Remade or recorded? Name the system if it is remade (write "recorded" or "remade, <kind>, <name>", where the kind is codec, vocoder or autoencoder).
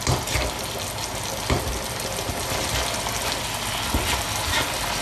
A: recorded